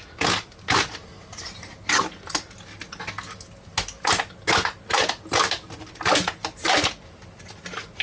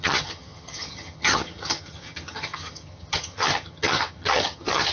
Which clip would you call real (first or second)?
first